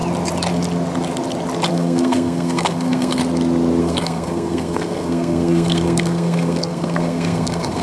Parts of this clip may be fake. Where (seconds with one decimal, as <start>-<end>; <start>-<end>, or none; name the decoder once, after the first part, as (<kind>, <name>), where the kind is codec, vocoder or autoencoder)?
1.7-3.2 (codec, SNAC); 3.8-7.8